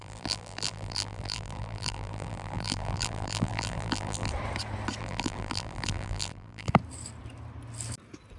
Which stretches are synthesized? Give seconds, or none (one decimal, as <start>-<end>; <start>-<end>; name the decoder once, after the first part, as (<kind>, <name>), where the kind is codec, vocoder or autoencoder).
0.0-4.3 (vocoder, BigVGAN v2); 5.0-6.7

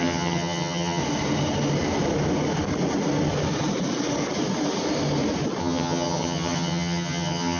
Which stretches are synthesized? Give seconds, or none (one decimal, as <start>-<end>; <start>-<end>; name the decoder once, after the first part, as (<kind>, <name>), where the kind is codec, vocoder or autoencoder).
0.0-1.0 (vocoder, HiFi-GAN); 5.6-7.6

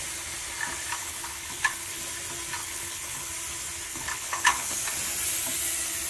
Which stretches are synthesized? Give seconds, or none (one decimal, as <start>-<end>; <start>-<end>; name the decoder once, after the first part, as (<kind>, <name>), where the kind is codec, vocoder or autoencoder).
1.0-2.0 (codec, HILCodec); 2.6-3.3; 3.9-4.8

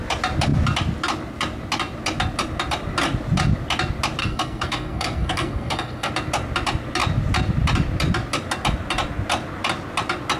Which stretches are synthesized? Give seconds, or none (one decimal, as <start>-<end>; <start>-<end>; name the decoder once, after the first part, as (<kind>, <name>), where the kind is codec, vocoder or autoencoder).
4.2-6.1 (codec, SNAC)

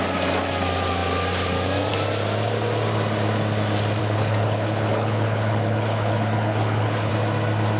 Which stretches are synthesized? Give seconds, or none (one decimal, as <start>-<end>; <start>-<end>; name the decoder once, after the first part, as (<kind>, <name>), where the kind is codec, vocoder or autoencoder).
4.0-7.1 (codec, HILCodec)